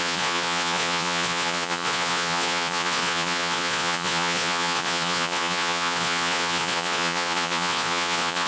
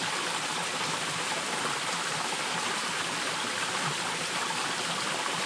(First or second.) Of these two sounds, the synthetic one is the first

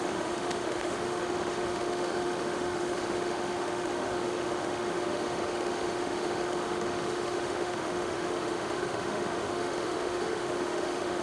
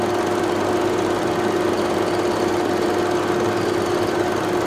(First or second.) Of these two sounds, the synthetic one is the first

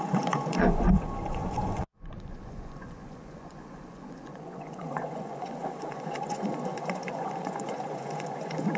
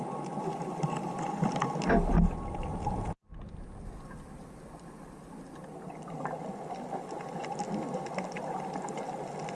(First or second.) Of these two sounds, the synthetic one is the first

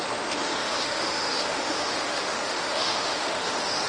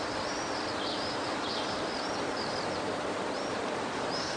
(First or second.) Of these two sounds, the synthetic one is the first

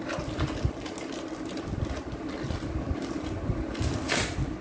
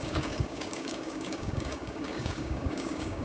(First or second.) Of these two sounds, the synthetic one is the second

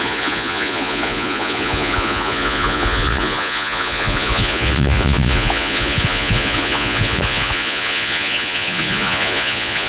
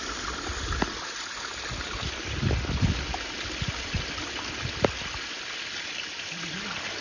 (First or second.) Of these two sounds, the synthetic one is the first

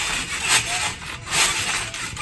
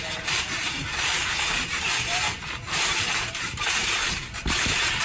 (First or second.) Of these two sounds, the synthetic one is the second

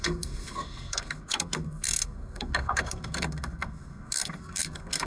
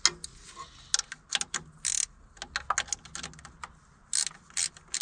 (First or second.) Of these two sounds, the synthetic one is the first